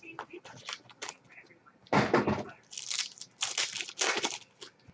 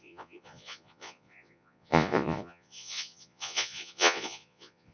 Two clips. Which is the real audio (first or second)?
first